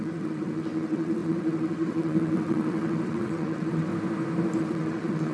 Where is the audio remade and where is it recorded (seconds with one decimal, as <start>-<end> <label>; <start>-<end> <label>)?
0.0-3.9 remade; 3.9-4.6 recorded; 4.6-5.3 remade